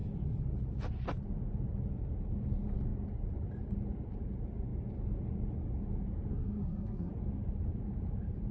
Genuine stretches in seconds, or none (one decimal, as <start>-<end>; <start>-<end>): 0.0-6.3; 7.1-8.5